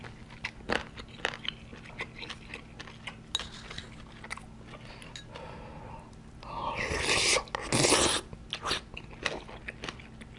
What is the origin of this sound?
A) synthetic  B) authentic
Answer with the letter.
B